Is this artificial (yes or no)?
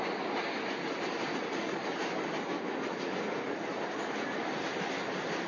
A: no